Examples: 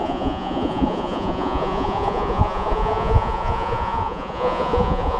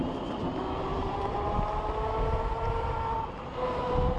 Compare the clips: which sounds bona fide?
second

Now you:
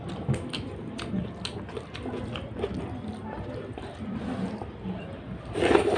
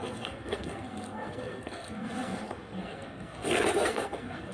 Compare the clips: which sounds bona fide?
first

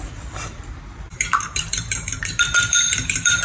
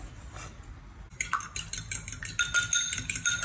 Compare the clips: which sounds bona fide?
second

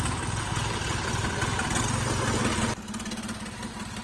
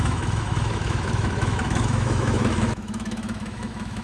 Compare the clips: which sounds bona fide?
first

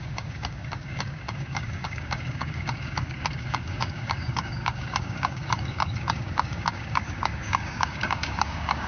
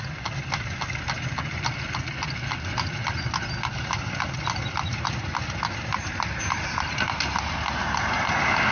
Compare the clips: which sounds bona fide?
second